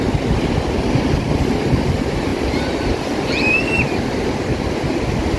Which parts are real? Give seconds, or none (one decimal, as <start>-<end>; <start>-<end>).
0.0-2.3; 4.0-5.4